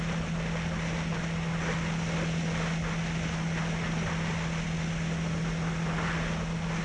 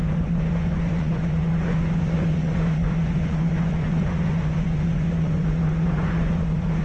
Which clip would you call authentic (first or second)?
first